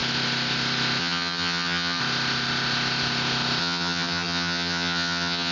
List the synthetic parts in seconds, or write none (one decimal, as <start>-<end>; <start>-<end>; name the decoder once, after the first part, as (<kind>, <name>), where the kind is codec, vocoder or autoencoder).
1.0-2.0 (vocoder, HiFi-GAN); 3.6-5.5